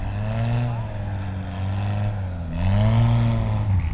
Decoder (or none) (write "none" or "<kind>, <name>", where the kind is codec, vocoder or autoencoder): none